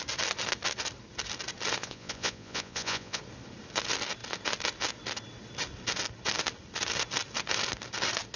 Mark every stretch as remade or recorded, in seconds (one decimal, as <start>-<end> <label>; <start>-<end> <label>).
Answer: 0.0-1.8 recorded; 1.8-3.2 remade; 3.2-8.4 recorded